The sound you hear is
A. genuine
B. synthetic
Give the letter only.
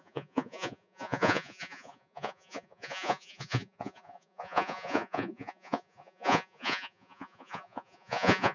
B